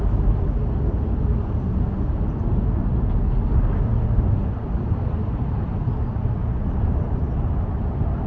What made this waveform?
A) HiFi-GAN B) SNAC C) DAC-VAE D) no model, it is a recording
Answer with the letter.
D